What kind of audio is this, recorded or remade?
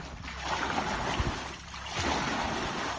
recorded